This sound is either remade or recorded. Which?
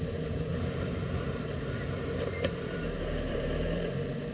remade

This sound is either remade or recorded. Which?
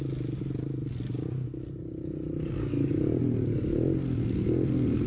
recorded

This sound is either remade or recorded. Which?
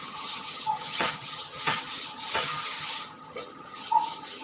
remade